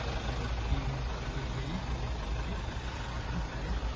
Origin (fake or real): real